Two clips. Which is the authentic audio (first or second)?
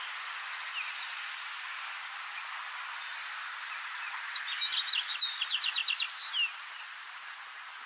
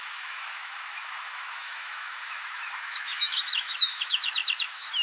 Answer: first